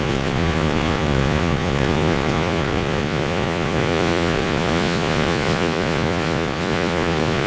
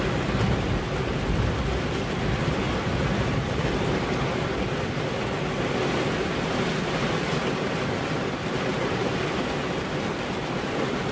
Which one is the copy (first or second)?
first